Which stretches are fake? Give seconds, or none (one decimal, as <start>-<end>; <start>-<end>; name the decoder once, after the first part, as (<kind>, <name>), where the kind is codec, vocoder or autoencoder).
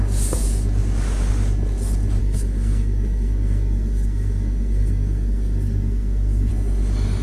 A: 2.2-6.5 (codec, SNAC)